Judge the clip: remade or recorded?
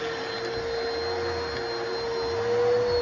recorded